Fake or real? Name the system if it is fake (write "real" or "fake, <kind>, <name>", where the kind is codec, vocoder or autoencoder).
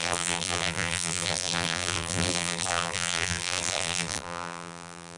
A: fake, vocoder, BigVGAN v2